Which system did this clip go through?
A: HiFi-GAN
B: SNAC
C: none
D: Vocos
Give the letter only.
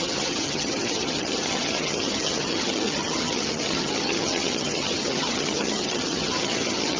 A